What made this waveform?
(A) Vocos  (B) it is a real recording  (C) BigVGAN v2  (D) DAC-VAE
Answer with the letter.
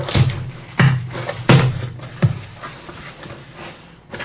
B